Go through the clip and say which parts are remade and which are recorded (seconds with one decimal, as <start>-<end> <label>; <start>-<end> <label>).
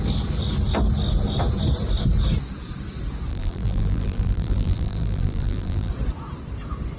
0.0-3.3 recorded; 3.3-5.9 remade; 5.9-7.0 recorded